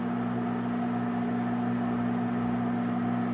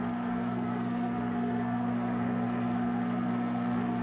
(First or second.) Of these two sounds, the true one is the first